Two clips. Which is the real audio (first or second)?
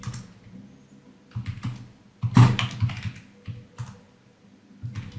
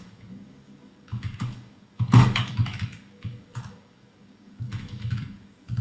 first